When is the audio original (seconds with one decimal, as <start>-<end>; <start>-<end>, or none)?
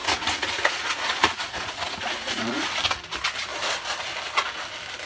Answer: 2.8-5.1